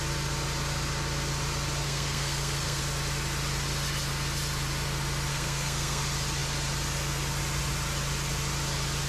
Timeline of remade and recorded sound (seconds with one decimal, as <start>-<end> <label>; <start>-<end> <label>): 0.0-1.8 recorded; 1.8-2.8 remade; 2.8-5.3 recorded; 5.3-6.0 remade; 6.0-9.1 recorded